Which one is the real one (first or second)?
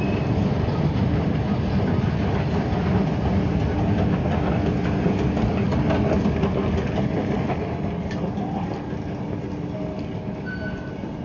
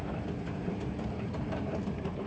first